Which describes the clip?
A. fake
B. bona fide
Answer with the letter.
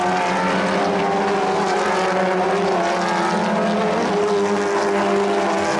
B